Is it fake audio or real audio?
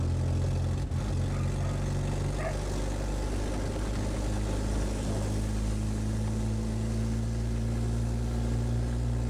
real